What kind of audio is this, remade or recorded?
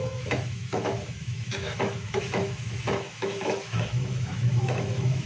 remade